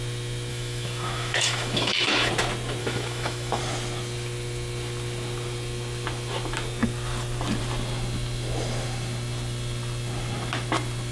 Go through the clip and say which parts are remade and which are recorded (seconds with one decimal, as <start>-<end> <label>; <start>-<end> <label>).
0.0-0.5 recorded; 0.5-2.3 remade; 2.3-2.8 recorded; 2.8-3.6 remade; 3.6-11.1 recorded